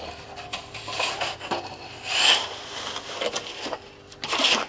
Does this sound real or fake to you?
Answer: real